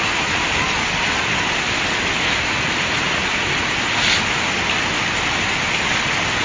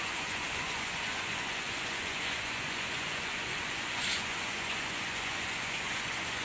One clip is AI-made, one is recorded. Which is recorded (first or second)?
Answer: first